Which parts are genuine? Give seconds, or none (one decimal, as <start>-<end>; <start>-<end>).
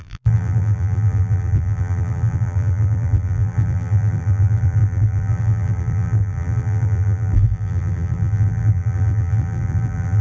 none